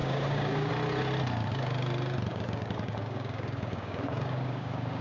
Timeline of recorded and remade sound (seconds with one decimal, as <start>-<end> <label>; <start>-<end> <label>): 0.0-0.7 remade; 0.7-2.3 recorded; 2.3-5.0 remade